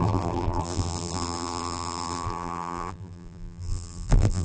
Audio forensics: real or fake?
fake